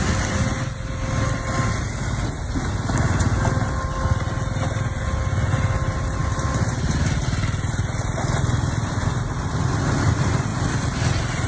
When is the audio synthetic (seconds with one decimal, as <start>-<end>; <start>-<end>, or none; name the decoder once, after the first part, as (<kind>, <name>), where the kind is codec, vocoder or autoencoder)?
6.2-9.2 (vocoder, BigVGAN v2)